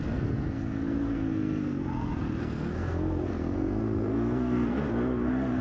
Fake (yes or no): yes